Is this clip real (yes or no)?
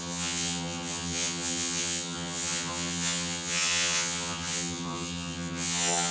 no